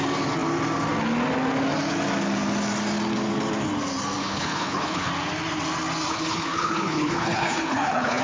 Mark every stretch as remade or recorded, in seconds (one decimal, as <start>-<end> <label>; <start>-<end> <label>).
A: 0.0-4.2 recorded; 4.2-5.1 remade; 5.1-6.1 recorded; 6.1-8.2 remade